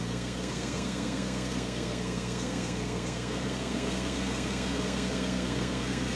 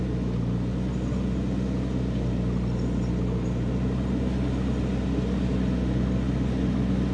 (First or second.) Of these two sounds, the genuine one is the second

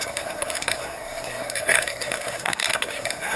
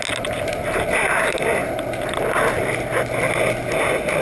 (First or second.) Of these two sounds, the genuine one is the second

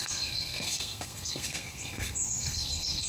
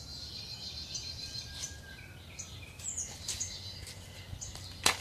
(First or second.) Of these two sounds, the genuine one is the second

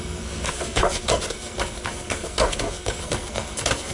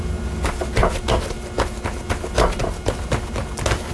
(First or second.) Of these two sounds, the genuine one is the second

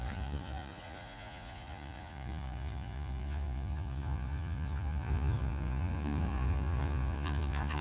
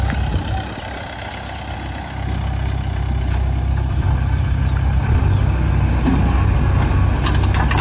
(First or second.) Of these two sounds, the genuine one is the second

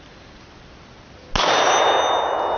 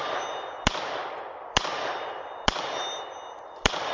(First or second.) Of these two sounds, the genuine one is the first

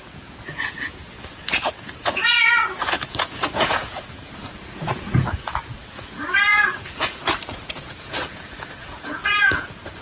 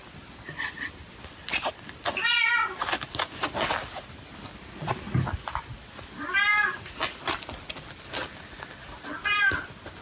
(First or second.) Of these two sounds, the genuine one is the second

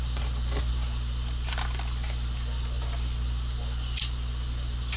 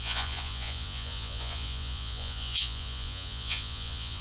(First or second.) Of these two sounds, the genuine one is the first